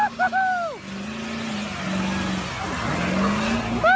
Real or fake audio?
real